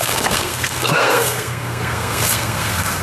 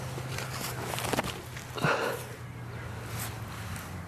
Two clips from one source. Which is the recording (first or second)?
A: second